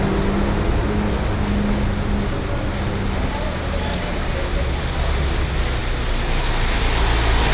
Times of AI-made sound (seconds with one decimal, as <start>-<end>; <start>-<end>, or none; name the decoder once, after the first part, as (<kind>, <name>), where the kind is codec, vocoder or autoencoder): none